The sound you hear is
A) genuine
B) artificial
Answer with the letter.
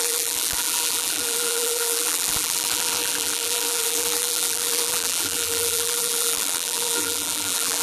B